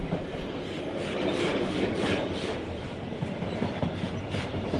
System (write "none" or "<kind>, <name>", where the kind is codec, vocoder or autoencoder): none